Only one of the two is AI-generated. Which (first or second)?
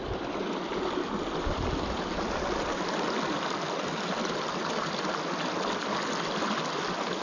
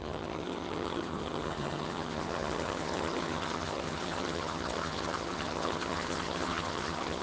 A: second